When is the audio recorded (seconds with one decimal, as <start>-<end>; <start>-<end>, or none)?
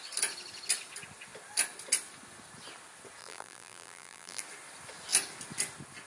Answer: 0.0-3.2; 4.4-6.1